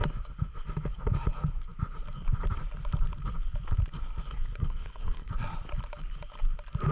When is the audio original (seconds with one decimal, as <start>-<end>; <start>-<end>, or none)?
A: 0.0-4.2; 5.3-6.9